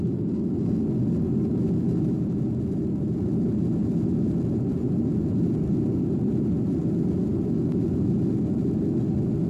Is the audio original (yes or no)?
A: yes